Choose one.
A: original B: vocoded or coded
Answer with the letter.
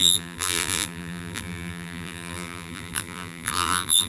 B